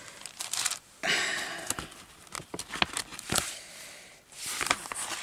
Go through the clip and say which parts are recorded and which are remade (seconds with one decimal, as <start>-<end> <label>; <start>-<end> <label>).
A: 0.0-3.1 recorded; 3.1-3.7 remade; 3.7-5.2 recorded